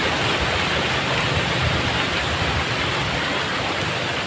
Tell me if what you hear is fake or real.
real